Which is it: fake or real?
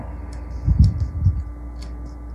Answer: real